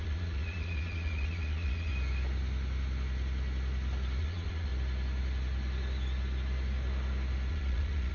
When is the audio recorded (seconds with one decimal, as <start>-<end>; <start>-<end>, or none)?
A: 1.9-4.2; 4.7-7.5